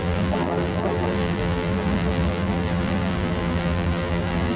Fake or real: fake